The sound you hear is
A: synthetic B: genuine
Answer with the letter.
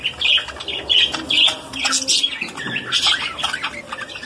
B